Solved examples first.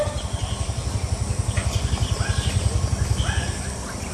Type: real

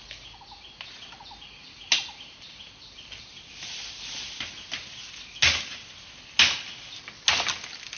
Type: real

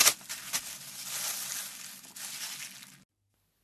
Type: real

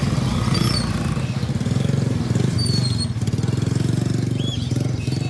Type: real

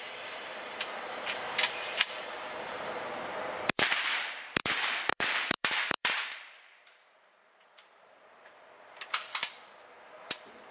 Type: fake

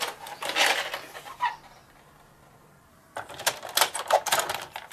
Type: fake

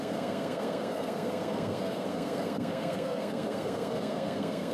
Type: fake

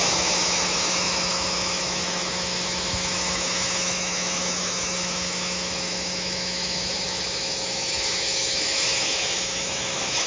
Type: fake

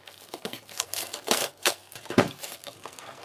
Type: fake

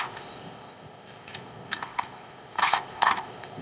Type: fake